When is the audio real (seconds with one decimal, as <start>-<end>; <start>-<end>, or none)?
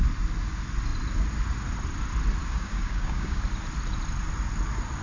0.0-2.4; 3.4-5.0